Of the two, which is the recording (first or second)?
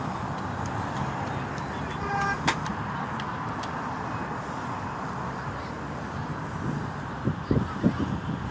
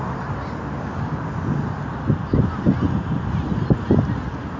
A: second